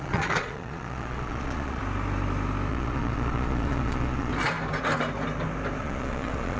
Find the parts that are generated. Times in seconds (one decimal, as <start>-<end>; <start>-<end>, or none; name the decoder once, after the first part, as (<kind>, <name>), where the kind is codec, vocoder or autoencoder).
0.0-1.8 (vocoder, Vocos); 2.7-4.3; 5.8-6.6

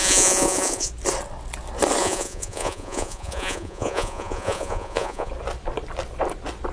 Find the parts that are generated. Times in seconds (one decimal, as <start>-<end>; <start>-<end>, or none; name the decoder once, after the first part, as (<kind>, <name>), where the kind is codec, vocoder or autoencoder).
0.0-0.9 (vocoder, Vocos); 2.0-5.3